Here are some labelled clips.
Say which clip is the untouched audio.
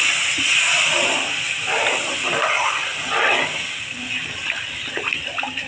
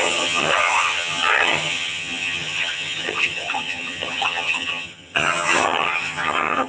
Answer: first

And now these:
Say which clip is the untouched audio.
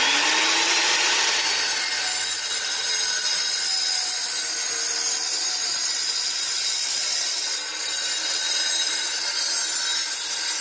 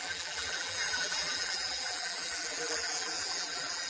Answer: first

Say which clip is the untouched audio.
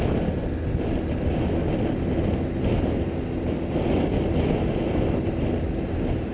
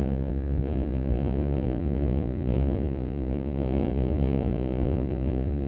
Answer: first